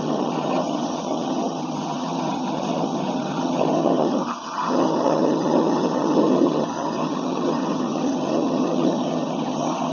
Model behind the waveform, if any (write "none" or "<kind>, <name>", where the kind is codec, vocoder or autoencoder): vocoder, HiFi-GAN